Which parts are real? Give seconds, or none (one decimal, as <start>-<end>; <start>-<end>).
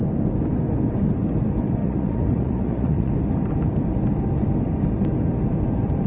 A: 0.0-1.8; 3.1-6.1